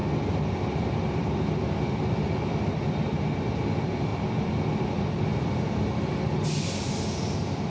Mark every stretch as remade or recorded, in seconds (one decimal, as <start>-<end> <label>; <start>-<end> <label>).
0.0-7.7 recorded